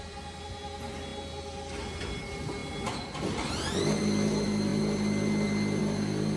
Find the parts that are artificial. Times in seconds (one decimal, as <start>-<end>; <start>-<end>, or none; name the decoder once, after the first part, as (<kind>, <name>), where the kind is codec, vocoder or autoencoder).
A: none